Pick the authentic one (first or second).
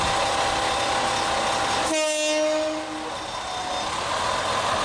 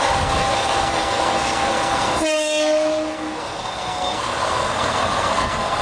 first